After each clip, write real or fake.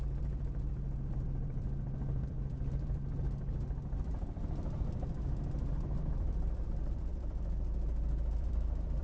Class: fake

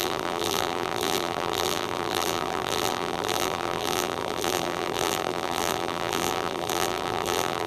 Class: fake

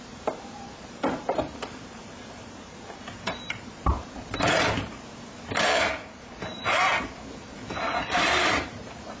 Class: fake